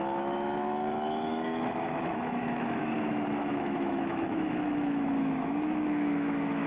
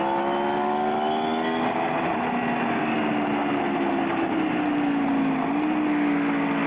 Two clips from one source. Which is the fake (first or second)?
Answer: first